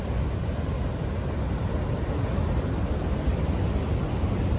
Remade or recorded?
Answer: recorded